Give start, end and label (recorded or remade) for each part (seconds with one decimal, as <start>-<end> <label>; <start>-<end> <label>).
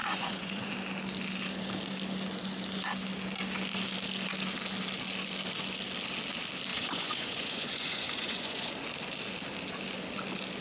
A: 0.0-0.7 remade; 0.7-6.7 recorded; 6.7-8.7 remade; 8.7-10.6 recorded